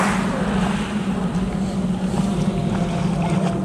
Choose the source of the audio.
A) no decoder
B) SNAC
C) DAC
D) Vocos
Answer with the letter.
A